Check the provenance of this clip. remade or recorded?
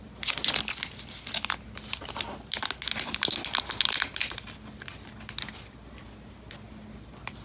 recorded